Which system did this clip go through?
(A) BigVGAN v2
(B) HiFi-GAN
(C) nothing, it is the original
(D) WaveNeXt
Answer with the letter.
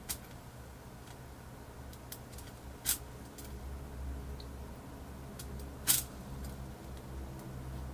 C